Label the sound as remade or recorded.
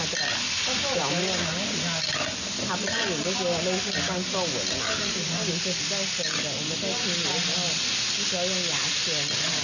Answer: recorded